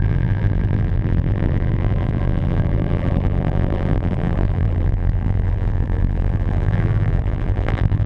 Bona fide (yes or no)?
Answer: no